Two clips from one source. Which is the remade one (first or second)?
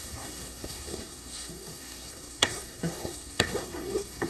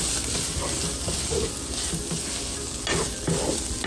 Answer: first